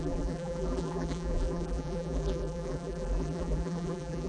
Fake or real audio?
fake